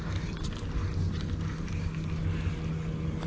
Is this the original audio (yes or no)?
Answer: yes